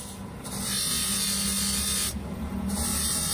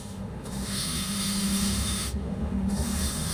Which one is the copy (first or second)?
second